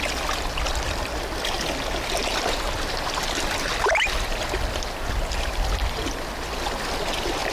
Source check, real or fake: real